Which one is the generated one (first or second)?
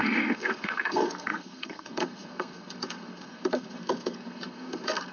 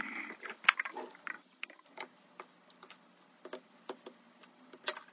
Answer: first